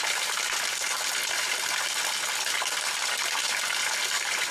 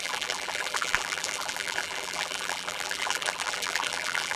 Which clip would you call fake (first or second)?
second